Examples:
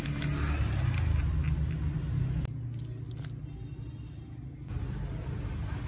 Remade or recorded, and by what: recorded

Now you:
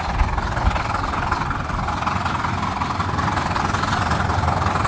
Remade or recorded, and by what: recorded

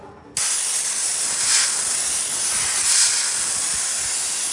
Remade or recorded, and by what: recorded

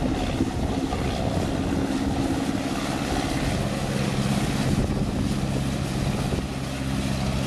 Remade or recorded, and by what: recorded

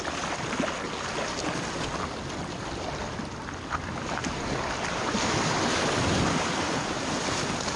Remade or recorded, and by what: recorded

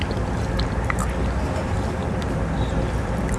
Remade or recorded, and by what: recorded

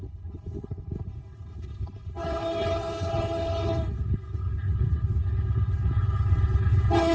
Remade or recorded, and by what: remade, codec, HILCodec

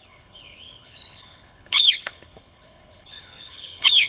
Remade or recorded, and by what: remade, codec, HILCodec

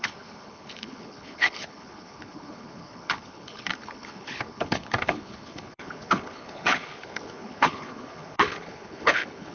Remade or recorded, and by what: remade, codec, HILCodec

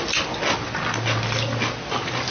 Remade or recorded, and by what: recorded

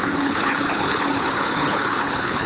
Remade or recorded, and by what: remade, codec, HILCodec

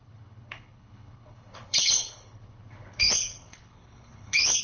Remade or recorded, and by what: remade, codec, HILCodec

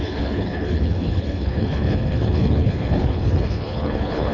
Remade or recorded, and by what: remade, codec, HILCodec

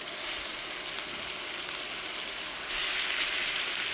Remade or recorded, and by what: recorded